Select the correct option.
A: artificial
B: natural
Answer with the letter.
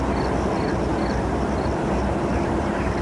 B